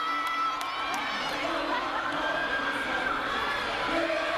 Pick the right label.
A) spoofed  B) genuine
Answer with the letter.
B